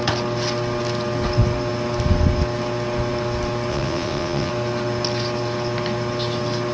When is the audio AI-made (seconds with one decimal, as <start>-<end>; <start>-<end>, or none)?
3.7-4.5